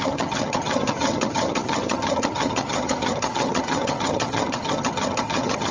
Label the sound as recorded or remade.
remade